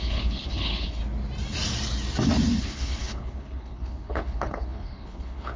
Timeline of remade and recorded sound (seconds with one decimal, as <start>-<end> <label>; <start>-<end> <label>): 0.0-1.0 remade; 1.0-2.6 recorded; 2.6-5.6 remade